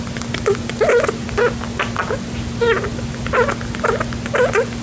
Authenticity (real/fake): real